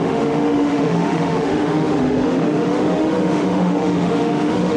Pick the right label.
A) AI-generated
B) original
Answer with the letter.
A